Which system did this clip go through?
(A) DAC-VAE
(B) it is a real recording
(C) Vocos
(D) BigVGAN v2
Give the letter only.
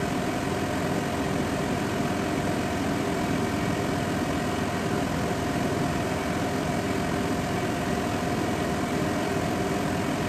D